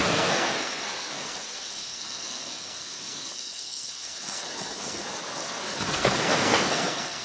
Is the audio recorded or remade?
remade